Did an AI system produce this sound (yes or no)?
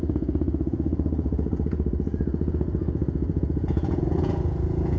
yes